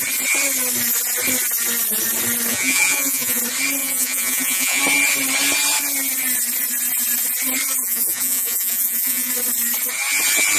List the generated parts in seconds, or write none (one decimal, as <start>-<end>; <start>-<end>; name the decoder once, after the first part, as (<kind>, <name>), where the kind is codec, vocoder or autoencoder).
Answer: 2.5-3.4 (vocoder, Vocos); 3.8-4.8; 7.8-9.3